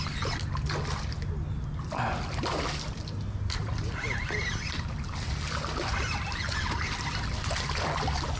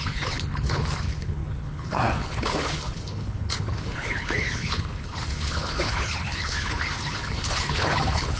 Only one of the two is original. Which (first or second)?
first